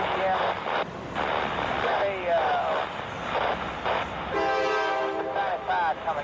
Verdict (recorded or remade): recorded